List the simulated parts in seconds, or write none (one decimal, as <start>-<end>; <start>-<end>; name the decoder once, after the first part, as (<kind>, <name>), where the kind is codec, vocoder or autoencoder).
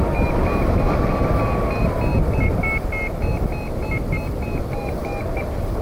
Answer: none